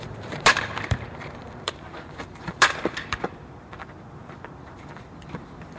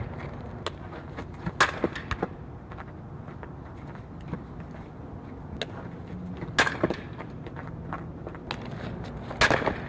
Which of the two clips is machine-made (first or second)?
first